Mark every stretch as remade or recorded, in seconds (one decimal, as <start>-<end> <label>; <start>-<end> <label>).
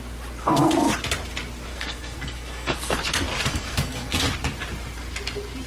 0.0-0.4 recorded; 0.4-0.9 remade; 0.9-1.7 recorded; 1.7-3.0 remade; 3.0-3.5 recorded; 3.5-4.2 remade; 4.2-5.7 recorded